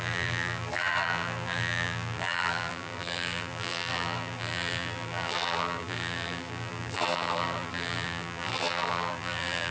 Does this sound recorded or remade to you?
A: remade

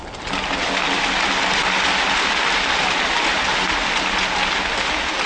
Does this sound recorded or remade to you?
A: recorded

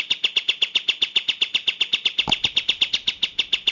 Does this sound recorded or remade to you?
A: recorded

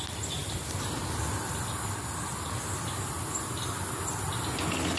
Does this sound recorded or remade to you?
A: recorded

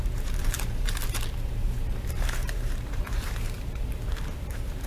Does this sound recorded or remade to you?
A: remade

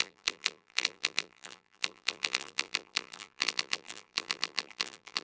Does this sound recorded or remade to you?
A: remade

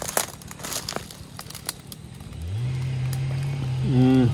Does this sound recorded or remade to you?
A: recorded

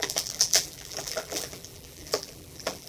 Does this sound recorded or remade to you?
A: remade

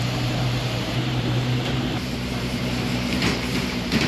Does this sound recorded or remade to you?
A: remade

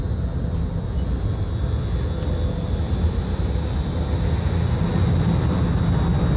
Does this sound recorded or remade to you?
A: recorded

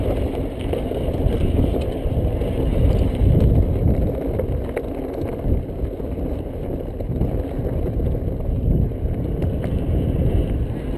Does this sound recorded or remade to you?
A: recorded